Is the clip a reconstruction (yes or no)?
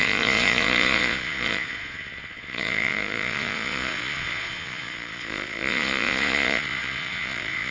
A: yes